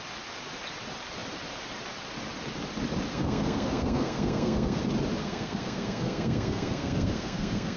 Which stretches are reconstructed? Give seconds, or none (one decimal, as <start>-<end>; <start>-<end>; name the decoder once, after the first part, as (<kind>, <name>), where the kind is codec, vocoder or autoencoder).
3.1-4.8 (codec, SNAC); 5.2-7.8